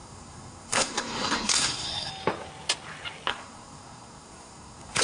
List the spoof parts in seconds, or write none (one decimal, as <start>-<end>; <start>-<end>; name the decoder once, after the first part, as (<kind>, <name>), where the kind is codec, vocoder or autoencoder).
0.0-2.1 (codec, SNAC); 3.3-5.0